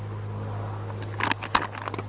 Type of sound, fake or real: real